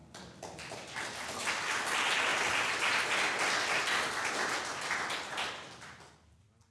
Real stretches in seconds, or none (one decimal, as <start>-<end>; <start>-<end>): 0.0-6.7